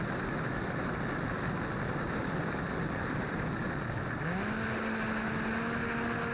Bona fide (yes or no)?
yes